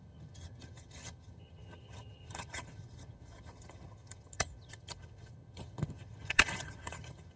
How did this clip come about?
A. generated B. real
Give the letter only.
A